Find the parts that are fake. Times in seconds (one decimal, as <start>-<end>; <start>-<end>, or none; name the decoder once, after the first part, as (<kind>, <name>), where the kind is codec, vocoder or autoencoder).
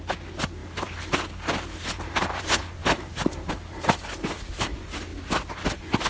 0.6-2.4 (vocoder, BigVGAN v2); 2.8-3.5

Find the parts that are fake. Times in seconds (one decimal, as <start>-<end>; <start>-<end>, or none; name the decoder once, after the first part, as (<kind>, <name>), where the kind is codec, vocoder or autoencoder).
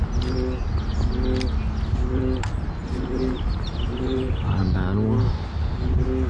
2.8-4.4 (vocoder, BigVGAN v2)